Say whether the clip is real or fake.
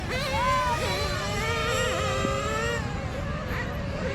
real